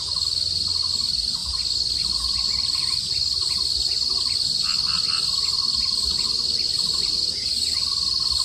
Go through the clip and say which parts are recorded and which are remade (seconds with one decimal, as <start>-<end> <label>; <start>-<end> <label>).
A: 0.0-8.4 recorded

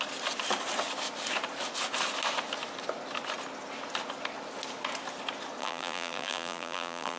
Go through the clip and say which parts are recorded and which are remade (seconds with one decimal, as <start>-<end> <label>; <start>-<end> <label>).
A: 0.0-5.6 recorded; 5.6-7.2 remade

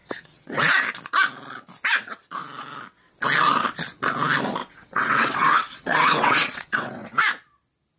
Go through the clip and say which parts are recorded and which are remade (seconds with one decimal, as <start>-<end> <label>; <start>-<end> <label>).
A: 0.0-0.7 remade; 0.7-4.6 recorded; 4.6-7.2 remade; 7.2-8.0 recorded

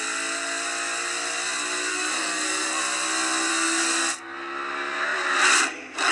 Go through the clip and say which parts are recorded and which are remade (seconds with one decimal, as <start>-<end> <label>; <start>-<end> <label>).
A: 0.0-1.9 recorded; 1.9-2.8 remade; 2.8-3.5 recorded; 3.5-4.2 remade; 4.2-6.1 recorded

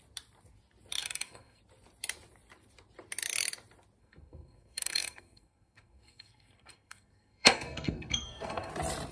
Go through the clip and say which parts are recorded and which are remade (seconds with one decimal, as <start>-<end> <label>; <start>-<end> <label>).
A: 0.0-1.0 recorded; 1.0-1.6 remade; 1.6-4.0 recorded; 4.0-8.7 remade; 8.7-9.1 recorded

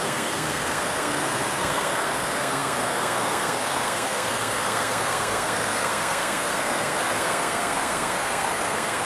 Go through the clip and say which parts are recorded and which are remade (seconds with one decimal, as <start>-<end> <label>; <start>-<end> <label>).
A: 0.0-9.1 remade

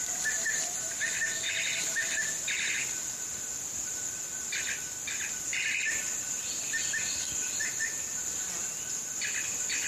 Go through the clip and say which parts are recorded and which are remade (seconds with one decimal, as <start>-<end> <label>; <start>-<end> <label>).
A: 0.0-0.5 recorded; 0.5-1.1 remade; 1.1-9.9 recorded

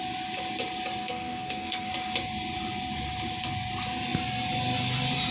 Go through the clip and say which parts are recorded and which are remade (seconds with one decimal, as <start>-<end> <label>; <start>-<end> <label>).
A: 0.0-1.0 recorded; 1.0-1.9 remade; 1.9-5.3 recorded